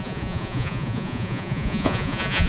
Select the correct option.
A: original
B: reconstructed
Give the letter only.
B